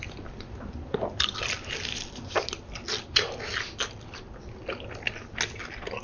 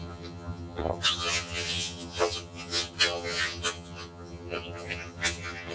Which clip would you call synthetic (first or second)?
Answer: second